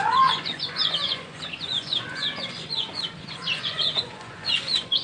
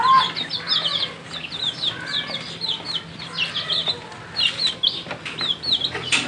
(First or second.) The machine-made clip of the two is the first